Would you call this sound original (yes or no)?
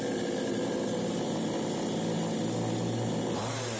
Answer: yes